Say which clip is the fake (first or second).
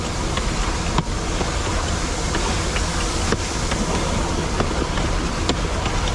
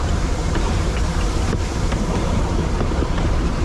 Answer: second